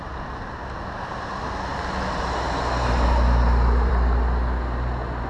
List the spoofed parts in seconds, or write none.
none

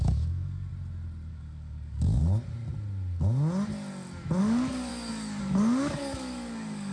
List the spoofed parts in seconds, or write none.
0.0-0.7 (codec, DAC); 1.3-2.2; 4.4-4.9; 5.4-6.9

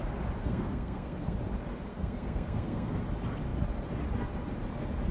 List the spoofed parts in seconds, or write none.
0.4-1.4 (codec, SNAC); 1.9-3.0